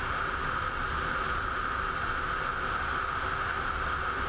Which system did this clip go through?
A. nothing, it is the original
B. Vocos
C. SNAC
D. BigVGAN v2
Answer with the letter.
A